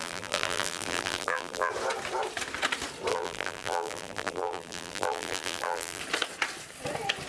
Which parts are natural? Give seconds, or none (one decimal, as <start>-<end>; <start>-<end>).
1.7-3.1; 6.0-7.3